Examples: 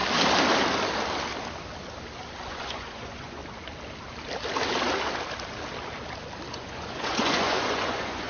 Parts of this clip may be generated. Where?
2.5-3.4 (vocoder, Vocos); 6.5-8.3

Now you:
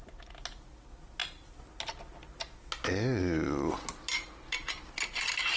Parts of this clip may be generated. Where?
none

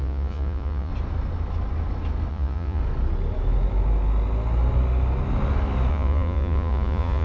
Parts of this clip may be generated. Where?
0.0-0.9 (vocoder, Vocos); 2.3-2.8; 5.9-7.2

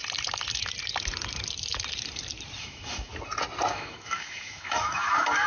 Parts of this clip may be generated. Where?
2.6-3.1 (autoencoder, DAC-VAE); 3.7-5.5